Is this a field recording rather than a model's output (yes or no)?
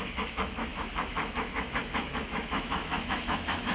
no